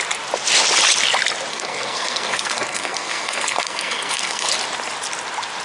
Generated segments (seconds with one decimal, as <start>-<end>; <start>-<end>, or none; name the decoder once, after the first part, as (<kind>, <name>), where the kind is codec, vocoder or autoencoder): 1.5-4.5 (codec, SNAC)